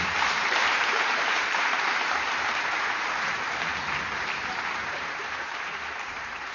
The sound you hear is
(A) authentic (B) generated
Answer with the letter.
B